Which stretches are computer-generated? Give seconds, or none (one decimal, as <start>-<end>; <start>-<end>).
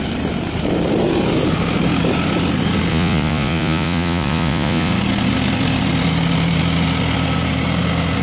2.9-4.9